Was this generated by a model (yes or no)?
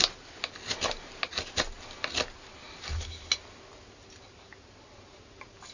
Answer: no